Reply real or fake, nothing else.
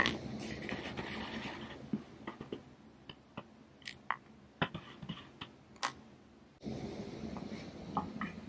real